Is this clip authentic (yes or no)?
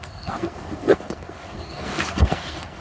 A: no